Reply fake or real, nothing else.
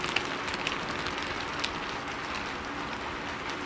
real